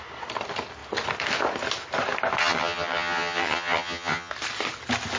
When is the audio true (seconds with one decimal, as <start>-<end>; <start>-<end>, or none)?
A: 0.0-2.4; 4.3-5.2